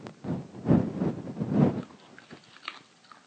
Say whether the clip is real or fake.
real